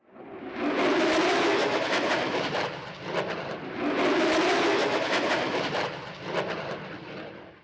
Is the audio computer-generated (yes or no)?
no